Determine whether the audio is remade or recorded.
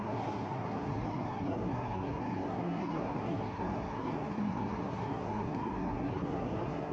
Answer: remade